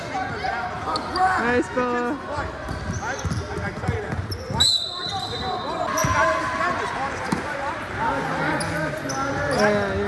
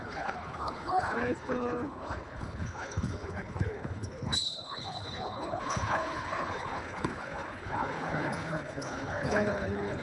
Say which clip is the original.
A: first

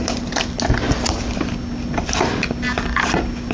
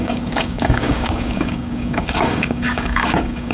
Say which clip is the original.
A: first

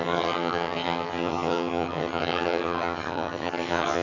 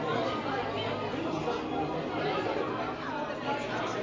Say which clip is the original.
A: second